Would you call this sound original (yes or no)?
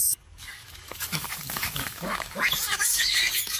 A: no